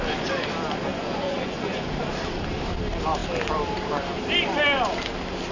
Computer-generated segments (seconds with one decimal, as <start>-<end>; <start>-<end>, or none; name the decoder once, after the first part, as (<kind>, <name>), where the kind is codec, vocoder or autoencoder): 0.9-1.9 (vocoder, Vocos)